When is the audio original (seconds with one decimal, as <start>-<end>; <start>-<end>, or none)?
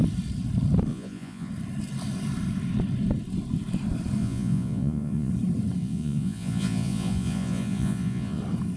0.0-0.9; 1.5-4.2; 5.3-5.8; 8.4-8.8